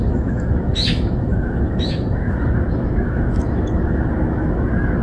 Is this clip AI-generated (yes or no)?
yes